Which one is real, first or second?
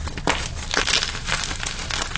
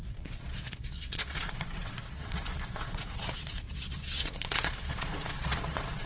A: first